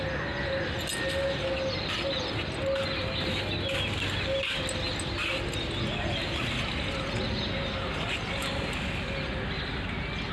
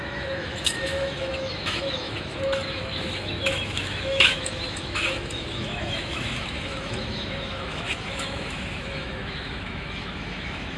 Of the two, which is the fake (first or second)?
second